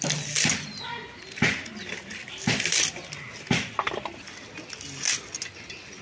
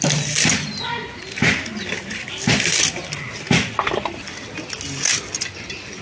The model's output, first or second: second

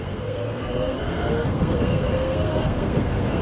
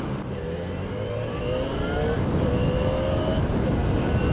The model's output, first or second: first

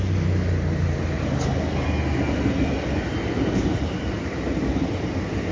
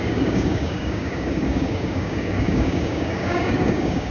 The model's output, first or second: second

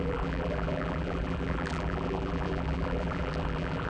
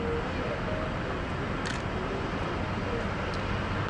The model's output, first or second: first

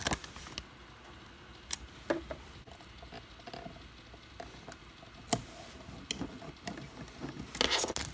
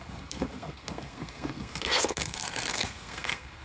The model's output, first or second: second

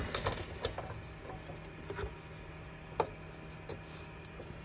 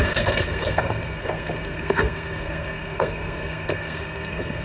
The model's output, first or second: second